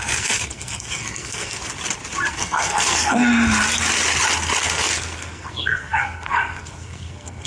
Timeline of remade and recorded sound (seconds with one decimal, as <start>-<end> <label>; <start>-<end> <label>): 0.0-1.6 remade; 1.6-2.3 recorded; 2.3-3.3 remade; 3.3-4.6 recorded; 4.6-7.5 remade